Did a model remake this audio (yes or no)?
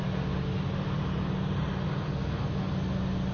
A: no